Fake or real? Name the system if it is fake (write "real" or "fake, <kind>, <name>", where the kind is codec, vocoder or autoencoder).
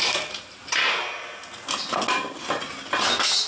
real